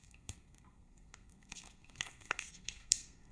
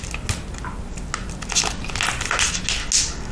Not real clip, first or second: first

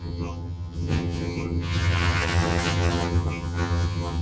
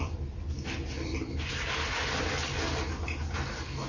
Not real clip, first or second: first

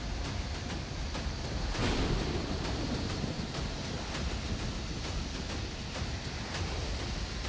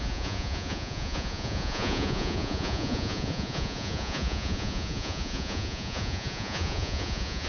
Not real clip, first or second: second